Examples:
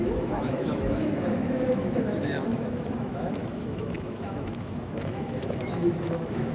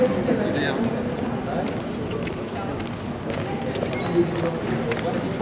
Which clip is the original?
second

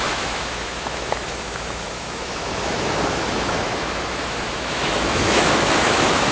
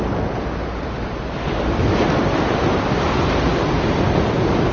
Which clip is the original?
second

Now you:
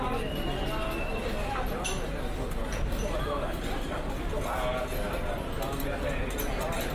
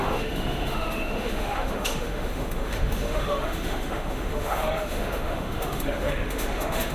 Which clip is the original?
first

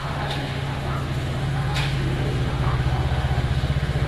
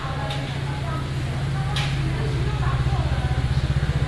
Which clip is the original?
second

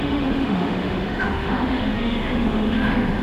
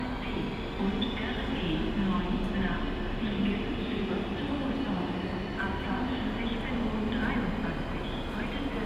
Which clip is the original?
second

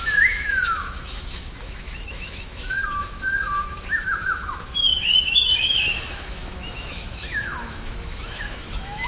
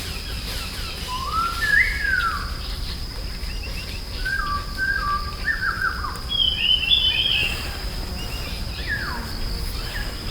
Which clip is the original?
second